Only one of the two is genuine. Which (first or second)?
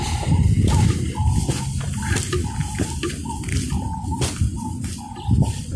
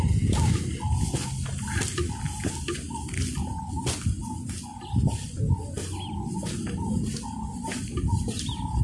second